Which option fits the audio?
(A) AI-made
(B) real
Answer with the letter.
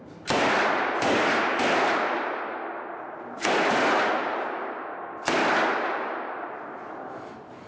B